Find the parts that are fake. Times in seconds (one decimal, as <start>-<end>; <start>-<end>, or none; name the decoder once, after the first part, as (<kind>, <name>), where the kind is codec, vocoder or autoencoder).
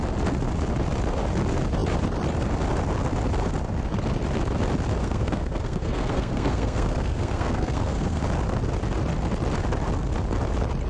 5.0-8.2 (codec, SNAC)